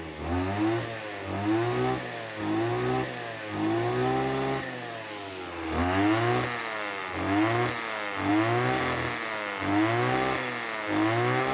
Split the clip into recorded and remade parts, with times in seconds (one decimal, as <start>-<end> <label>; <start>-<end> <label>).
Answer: 0.0-11.5 recorded